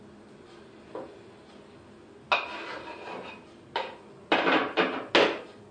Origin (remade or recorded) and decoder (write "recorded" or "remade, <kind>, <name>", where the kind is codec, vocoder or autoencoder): recorded